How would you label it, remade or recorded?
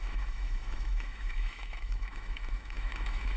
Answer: remade